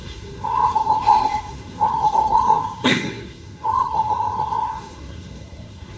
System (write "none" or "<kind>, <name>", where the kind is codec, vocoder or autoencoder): codec, SNAC